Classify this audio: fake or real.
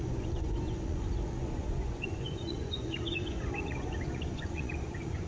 fake